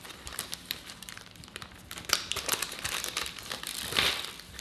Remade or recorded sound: remade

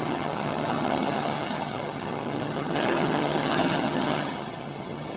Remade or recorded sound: remade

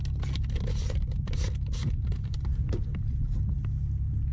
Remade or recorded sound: recorded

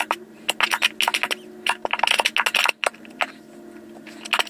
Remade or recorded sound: recorded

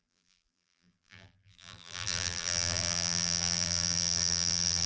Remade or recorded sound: remade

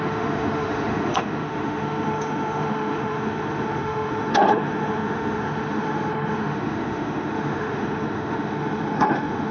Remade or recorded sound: remade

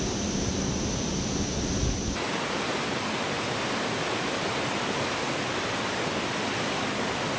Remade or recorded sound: recorded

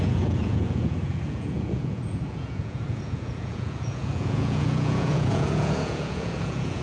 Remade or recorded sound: remade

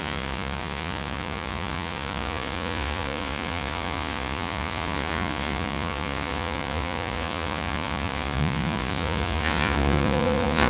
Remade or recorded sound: remade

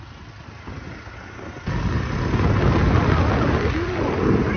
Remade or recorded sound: recorded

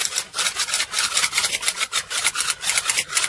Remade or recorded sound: recorded